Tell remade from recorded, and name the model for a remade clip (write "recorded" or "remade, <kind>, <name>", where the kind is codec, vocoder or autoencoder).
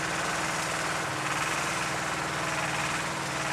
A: recorded